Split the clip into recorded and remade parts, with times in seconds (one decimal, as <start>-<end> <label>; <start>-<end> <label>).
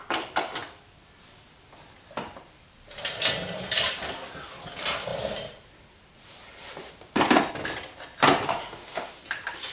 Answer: 0.0-8.5 recorded; 8.5-9.2 remade; 9.2-9.7 recorded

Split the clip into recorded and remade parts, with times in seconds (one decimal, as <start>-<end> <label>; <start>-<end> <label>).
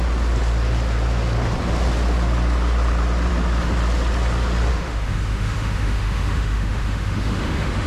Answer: 0.0-4.7 recorded; 4.7-7.9 remade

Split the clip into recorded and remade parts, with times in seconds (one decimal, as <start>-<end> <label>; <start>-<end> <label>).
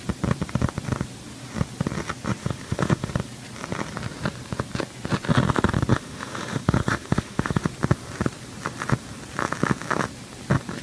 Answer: 0.0-2.4 recorded; 2.4-3.1 remade; 3.1-5.9 recorded; 5.9-7.6 remade; 7.6-10.8 recorded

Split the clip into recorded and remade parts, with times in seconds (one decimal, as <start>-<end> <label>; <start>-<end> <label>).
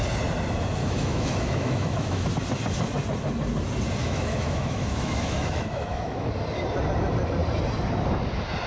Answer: 0.0-0.8 recorded; 0.8-2.3 remade; 2.3-4.0 recorded; 4.0-6.3 remade; 6.3-8.7 recorded